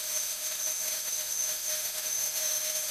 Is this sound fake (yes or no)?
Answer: yes